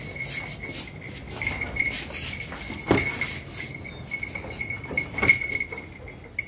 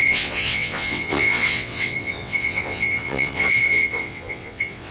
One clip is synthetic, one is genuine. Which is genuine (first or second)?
first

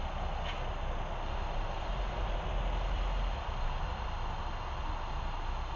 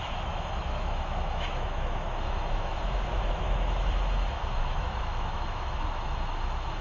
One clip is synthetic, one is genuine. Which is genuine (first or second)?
first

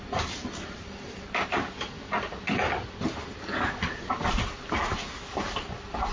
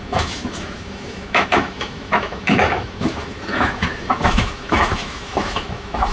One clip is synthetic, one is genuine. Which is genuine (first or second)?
first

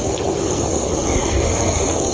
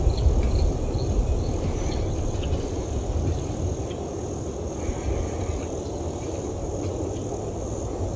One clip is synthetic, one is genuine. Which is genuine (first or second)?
second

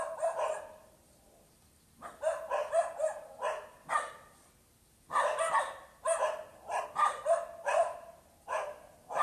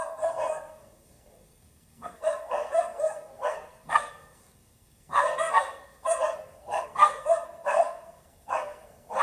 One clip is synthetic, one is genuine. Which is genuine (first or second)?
first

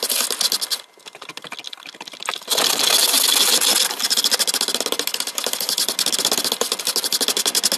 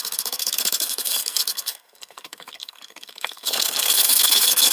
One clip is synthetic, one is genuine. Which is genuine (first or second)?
first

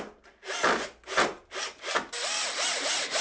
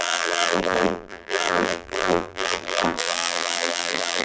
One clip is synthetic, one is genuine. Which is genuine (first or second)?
first